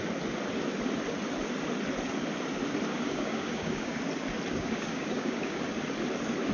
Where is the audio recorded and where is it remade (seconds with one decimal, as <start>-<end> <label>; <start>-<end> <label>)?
0.0-2.9 recorded; 2.9-4.0 remade; 4.0-4.5 recorded; 4.5-5.6 remade; 5.6-6.5 recorded